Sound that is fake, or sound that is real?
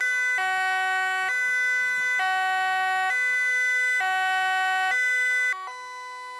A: real